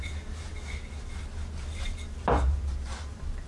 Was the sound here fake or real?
real